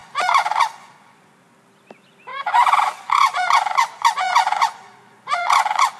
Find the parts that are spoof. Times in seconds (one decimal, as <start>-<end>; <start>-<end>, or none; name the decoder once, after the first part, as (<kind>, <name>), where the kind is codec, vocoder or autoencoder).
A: 0.0-1.3 (vocoder, Vocos); 2.3-6.0